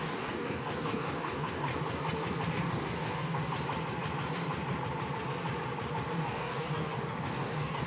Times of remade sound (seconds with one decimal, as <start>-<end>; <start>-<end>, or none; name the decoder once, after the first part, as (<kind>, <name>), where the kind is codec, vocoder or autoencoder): 0.0-1.7 (codec, DAC); 2.5-3.4; 6.2-7.9